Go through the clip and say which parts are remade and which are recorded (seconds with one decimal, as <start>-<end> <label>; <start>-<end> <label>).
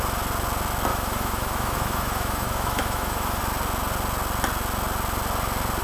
0.0-0.9 recorded; 0.9-3.4 remade; 3.4-5.8 recorded